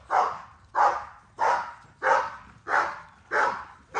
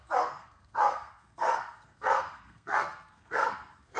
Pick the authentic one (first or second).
first